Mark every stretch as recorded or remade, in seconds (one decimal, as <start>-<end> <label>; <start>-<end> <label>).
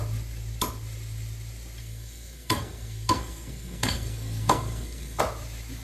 0.0-1.8 recorded; 1.8-5.2 remade; 5.2-5.8 recorded